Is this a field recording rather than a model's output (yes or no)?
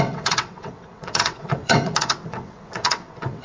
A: no